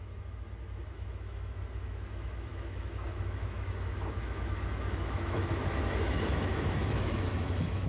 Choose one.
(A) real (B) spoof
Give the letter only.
B